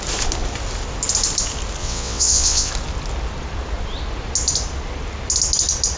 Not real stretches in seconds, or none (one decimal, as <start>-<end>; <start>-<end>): 1.8-2.7